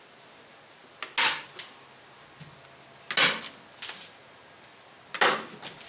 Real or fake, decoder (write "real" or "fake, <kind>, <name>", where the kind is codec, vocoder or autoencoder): real